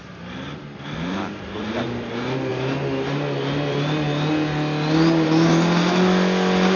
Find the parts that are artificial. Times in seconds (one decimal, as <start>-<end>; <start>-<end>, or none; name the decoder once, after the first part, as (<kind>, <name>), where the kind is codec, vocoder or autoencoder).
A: none